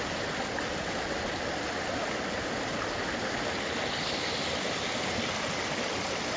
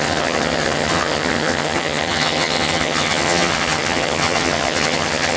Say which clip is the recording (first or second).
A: first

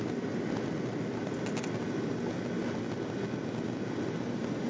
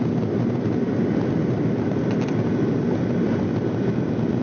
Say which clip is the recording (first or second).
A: first